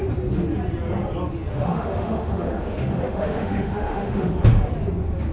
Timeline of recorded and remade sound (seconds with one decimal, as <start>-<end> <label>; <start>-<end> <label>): 0.0-1.5 recorded; 1.5-4.7 remade; 4.7-5.3 recorded